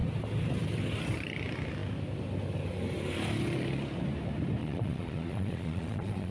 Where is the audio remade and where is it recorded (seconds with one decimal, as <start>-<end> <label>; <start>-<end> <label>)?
0.0-4.6 recorded; 4.6-6.3 remade